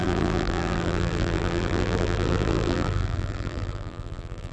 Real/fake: fake